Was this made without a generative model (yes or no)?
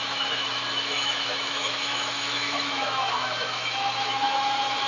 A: no